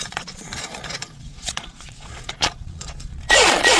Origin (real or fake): fake